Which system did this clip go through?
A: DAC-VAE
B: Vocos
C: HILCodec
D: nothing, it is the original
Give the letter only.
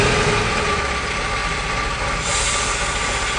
D